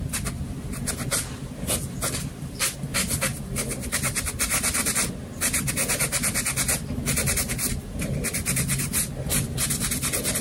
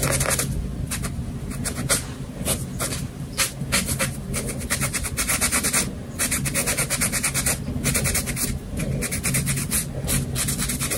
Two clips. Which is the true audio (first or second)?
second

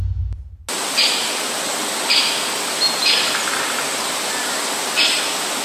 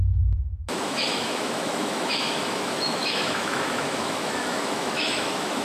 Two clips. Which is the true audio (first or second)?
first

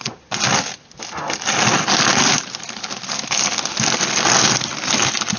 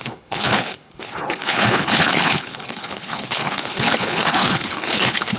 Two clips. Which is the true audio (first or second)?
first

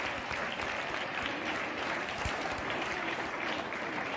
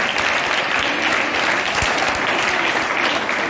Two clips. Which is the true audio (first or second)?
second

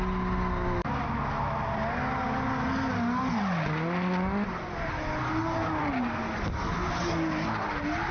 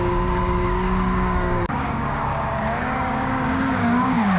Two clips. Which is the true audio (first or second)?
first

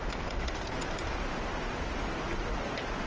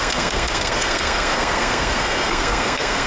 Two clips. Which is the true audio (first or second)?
first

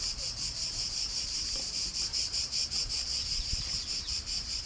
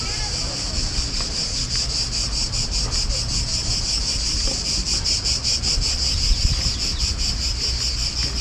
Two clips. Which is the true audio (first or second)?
second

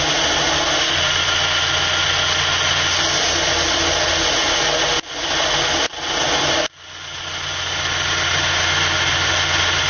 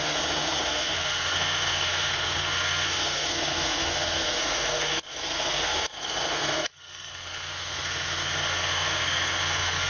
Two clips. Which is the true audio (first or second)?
first